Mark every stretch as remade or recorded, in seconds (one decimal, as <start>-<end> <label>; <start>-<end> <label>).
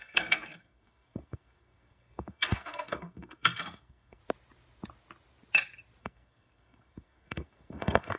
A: 0.0-4.2 remade; 4.2-6.0 recorded; 6.0-8.2 remade